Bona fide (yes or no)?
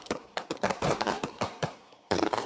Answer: no